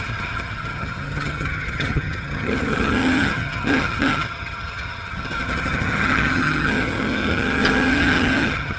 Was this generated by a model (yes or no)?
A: yes